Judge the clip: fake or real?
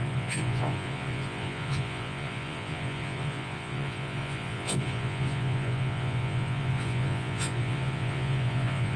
fake